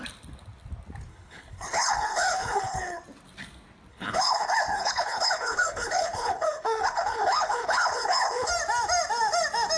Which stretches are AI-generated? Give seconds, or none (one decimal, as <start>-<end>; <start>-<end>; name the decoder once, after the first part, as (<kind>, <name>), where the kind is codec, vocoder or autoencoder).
1.1-3.0 (codec, HILCodec); 3.9-8.5